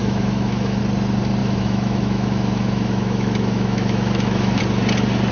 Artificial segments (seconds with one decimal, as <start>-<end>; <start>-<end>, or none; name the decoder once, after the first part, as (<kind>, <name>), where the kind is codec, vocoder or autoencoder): 0.0-0.8 (autoencoder, DAC-VAE); 1.4-4.6